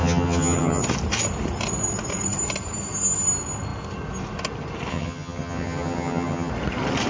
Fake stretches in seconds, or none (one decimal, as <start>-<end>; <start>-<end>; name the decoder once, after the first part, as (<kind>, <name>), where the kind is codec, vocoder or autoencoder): 0.0-0.8 (vocoder, HiFi-GAN); 4.9-6.5